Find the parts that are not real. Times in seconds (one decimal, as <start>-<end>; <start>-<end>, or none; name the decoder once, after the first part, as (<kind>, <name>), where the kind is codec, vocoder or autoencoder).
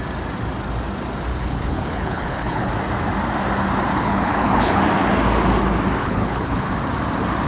1.3-2.7 (codec, HILCodec); 3.9-4.8; 6.0-6.7